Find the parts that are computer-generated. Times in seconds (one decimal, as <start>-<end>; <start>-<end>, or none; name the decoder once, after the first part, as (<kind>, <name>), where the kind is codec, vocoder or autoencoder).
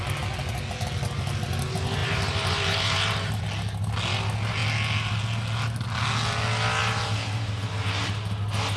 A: 2.0-3.4 (vocoder, BigVGAN v2); 6.8-8.1